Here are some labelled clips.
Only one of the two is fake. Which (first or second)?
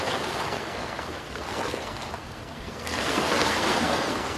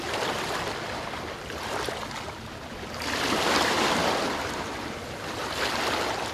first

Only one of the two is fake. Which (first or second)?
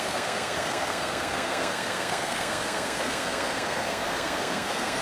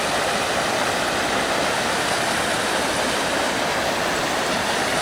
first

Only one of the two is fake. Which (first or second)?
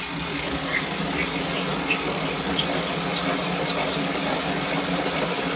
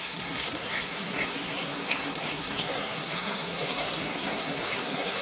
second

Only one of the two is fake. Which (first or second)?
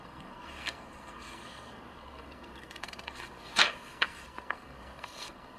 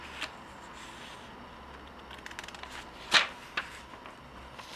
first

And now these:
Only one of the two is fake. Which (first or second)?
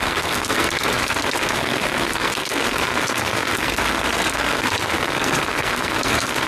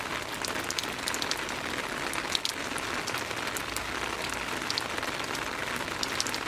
first